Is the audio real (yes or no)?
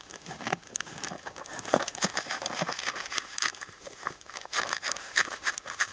no